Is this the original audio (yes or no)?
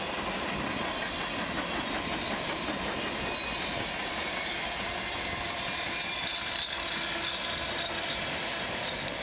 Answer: yes